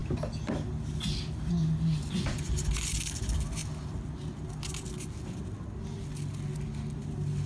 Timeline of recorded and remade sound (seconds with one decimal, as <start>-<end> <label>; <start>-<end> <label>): 0.0-7.5 recorded